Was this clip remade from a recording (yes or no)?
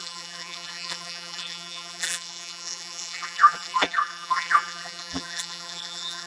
yes